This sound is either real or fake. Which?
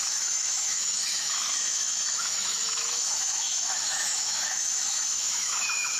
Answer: fake